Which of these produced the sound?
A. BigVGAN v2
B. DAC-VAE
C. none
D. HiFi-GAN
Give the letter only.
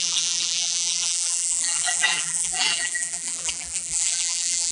A